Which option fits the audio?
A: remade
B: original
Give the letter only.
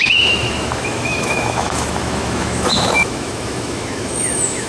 A